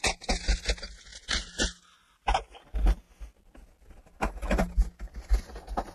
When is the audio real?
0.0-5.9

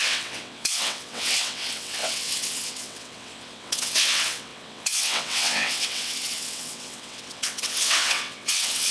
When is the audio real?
none

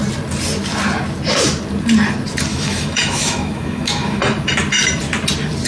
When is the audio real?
0.0-2.5; 4.2-5.7

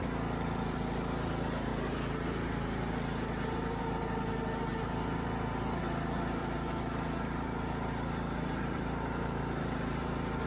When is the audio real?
0.0-6.4; 9.8-10.5

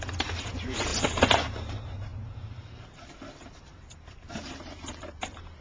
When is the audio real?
0.9-1.7

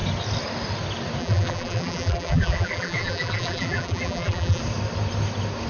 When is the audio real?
0.0-1.2; 4.6-5.7